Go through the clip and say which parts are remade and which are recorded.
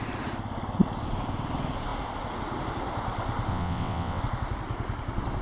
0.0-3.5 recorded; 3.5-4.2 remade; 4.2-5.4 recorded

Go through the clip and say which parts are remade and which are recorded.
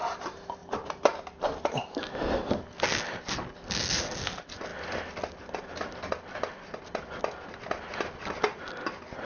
0.0-9.3 recorded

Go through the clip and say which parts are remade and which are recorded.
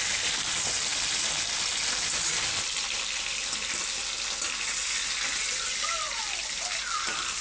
0.0-7.4 recorded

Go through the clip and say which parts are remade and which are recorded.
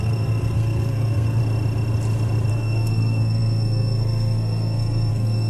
0.0-1.4 remade; 1.4-2.5 recorded; 2.5-5.5 remade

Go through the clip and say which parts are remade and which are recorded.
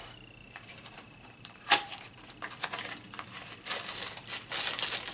0.0-0.4 recorded; 0.4-2.3 remade; 2.3-5.1 recorded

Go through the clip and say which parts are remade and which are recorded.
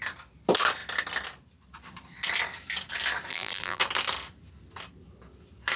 0.0-3.3 recorded; 3.3-3.8 remade; 3.8-5.8 recorded